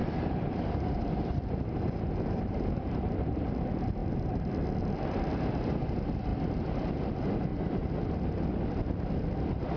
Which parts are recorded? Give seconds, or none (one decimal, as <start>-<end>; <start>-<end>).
3.4-9.8